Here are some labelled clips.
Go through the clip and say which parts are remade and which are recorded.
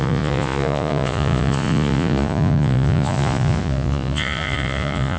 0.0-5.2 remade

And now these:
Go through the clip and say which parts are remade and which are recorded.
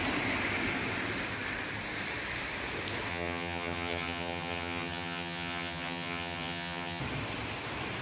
0.0-3.1 recorded; 3.1-7.0 remade; 7.0-8.0 recorded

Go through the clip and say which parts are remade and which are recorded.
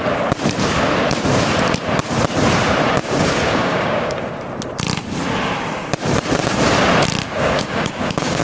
0.0-3.0 recorded; 3.0-4.4 remade; 4.4-7.3 recorded; 7.3-8.4 remade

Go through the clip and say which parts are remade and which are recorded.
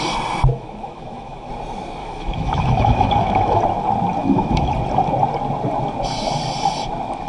0.0-0.5 recorded; 0.5-1.5 remade; 1.5-2.0 recorded; 2.0-3.6 remade; 3.6-4.2 recorded; 4.2-4.7 remade; 4.7-7.3 recorded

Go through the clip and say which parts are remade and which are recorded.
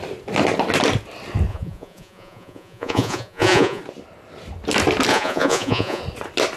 0.0-1.5 recorded; 1.5-3.8 remade; 3.8-5.1 recorded; 5.1-6.0 remade; 6.0-6.6 recorded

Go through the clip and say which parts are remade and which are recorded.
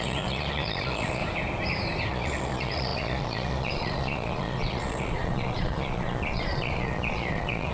0.0-1.2 remade; 1.2-2.1 recorded; 2.1-7.7 remade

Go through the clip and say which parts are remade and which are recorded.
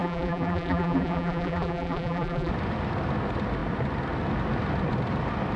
0.0-2.5 remade; 2.5-5.6 recorded